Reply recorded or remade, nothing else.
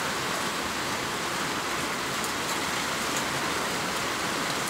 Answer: recorded